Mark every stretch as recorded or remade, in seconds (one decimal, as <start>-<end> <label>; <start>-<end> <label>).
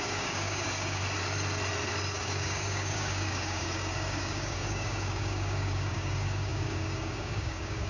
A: 0.0-1.0 remade; 1.0-2.1 recorded; 2.1-7.9 remade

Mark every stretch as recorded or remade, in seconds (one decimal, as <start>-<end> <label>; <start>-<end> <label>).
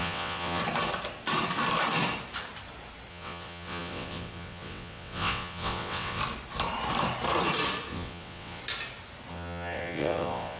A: 0.0-0.6 remade; 0.6-3.1 recorded; 3.1-6.2 remade; 6.2-7.9 recorded; 7.9-8.6 remade; 8.6-9.3 recorded; 9.3-10.6 remade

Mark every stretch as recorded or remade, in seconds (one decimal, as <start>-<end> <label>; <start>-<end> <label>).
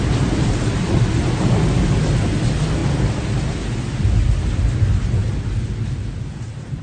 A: 0.0-0.7 recorded; 0.7-1.4 remade; 1.4-6.8 recorded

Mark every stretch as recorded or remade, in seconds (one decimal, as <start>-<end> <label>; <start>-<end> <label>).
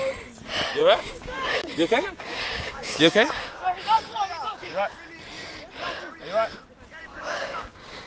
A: 0.0-0.8 recorded; 0.8-4.8 remade; 4.8-7.1 recorded; 7.1-8.1 remade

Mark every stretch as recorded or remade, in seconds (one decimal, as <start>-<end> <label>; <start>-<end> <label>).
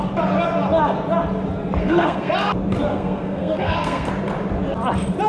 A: 0.0-1.8 recorded; 1.8-2.3 remade; 2.3-2.9 recorded; 2.9-4.1 remade; 4.1-5.3 recorded